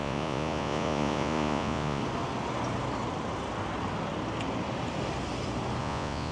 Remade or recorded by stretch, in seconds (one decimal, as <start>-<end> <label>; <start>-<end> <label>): 0.0-2.0 remade; 2.0-5.8 recorded; 5.8-6.3 remade